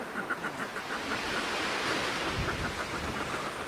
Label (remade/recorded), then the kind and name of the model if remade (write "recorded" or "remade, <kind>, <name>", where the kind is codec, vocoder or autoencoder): recorded